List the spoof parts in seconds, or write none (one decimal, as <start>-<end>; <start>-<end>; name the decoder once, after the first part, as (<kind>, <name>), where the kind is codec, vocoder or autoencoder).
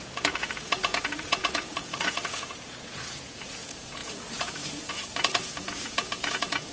0.0-6.7 (vocoder, Vocos)